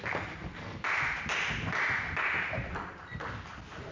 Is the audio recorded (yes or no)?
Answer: yes